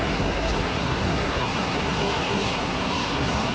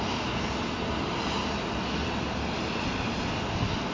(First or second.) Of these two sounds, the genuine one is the second